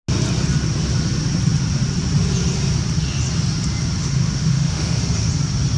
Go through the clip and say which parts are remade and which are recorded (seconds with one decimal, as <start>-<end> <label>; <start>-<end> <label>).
0.0-4.0 recorded; 4.0-5.0 remade; 5.0-5.8 recorded

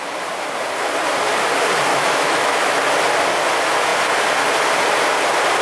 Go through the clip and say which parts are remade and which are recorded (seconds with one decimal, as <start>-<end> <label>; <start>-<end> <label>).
0.0-1.9 recorded; 1.9-2.8 remade; 2.8-5.6 recorded

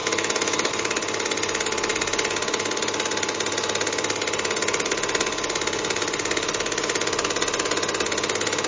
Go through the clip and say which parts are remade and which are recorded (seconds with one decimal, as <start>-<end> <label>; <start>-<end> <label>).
0.0-0.7 remade; 0.7-8.7 recorded

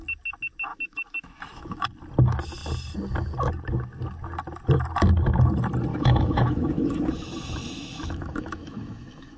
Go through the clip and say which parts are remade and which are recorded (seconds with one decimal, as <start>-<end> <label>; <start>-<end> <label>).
0.0-0.7 recorded; 0.7-1.9 remade; 1.9-5.9 recorded; 5.9-9.4 remade

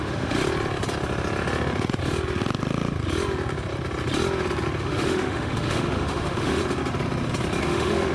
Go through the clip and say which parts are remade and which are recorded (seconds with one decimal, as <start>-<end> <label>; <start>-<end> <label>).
0.0-0.4 remade; 0.4-4.8 recorded; 4.8-6.6 remade; 6.6-7.6 recorded; 7.6-8.1 remade

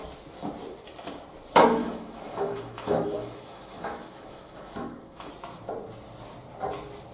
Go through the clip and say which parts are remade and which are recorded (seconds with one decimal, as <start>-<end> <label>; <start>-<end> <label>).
0.0-1.8 recorded; 1.8-5.3 remade; 5.3-7.1 recorded

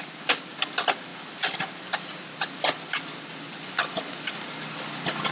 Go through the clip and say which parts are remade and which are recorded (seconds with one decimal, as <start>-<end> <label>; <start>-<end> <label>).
0.0-5.3 recorded